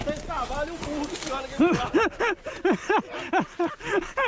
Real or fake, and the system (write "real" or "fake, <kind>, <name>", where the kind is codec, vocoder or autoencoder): real